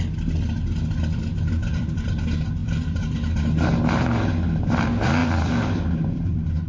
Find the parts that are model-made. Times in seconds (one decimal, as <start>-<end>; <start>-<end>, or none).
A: 1.3-2.1; 5.2-6.3